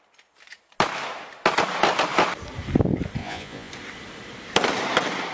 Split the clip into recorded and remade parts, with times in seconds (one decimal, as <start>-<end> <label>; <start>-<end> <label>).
0.0-3.2 recorded; 3.2-3.7 remade; 3.7-5.3 recorded